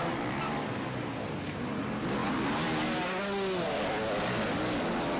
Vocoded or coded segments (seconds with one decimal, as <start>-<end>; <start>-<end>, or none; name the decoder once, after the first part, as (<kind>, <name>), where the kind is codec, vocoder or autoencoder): none